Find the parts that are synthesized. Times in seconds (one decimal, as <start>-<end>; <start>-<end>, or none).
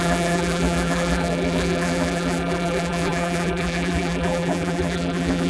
0.0-5.5